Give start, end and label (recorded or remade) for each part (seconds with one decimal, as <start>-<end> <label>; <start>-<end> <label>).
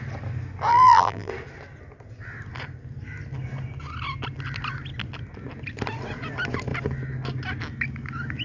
0.0-0.7 recorded; 0.7-1.3 remade; 1.3-8.4 recorded